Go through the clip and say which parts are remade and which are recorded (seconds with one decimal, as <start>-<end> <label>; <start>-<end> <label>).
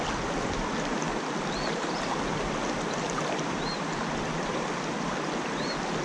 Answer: 0.0-6.0 recorded